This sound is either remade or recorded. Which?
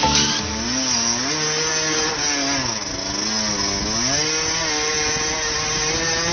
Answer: recorded